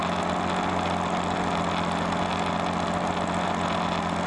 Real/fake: real